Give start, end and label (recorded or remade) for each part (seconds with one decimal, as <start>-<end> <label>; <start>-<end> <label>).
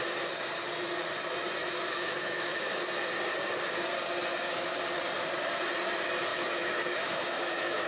0.0-1.6 recorded; 1.6-2.8 remade; 2.8-4.3 recorded; 4.3-4.8 remade; 4.8-6.3 recorded; 6.3-7.9 remade